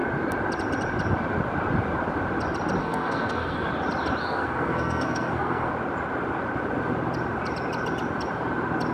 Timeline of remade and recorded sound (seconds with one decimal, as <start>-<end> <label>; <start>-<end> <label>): 0.0-2.8 recorded; 2.8-3.7 remade; 3.7-4.2 recorded; 4.2-5.7 remade; 5.7-8.9 recorded

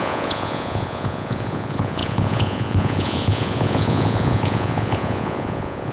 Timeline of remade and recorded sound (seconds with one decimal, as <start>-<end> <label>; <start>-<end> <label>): 0.0-5.9 remade

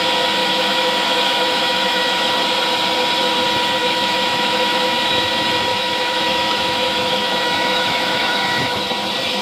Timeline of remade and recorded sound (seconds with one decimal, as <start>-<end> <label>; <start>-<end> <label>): 0.0-0.4 recorded; 0.4-2.3 remade; 2.3-3.8 recorded; 3.8-5.3 remade; 5.3-5.7 recorded; 5.7-8.8 remade; 8.8-9.4 recorded

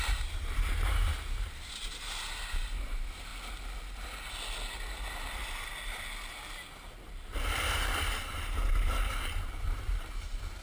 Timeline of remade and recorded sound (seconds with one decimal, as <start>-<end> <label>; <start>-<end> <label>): 0.0-3.3 remade; 3.3-7.0 recorded; 7.0-10.6 remade

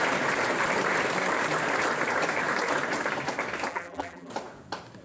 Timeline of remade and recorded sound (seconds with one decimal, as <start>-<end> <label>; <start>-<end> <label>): 0.0-3.7 recorded; 3.7-4.3 remade; 4.3-5.0 recorded

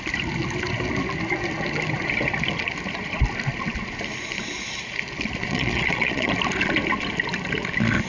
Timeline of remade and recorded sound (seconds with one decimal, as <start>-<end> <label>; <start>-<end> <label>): 0.0-5.4 recorded; 5.4-6.3 remade; 6.3-8.1 recorded

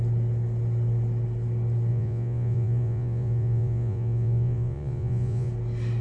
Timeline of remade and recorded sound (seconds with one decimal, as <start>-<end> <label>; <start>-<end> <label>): 0.0-1.9 recorded; 1.9-5.5 remade; 5.5-6.0 recorded